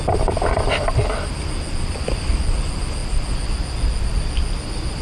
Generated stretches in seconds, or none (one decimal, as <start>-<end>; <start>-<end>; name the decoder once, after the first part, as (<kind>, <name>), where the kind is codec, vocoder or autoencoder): none